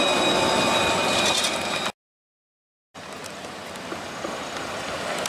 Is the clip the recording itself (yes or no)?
yes